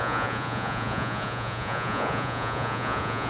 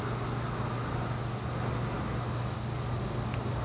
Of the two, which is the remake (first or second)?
first